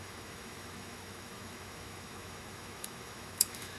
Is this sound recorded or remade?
remade